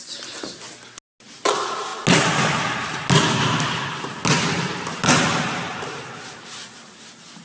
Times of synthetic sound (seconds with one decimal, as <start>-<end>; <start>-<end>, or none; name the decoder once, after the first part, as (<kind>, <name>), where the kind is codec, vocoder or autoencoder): none